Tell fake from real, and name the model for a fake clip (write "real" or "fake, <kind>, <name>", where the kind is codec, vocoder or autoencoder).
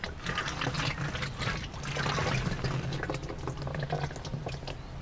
real